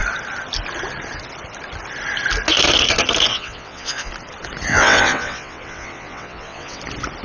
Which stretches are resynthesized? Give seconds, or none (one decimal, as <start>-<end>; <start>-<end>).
3.3-4.1; 4.7-6.8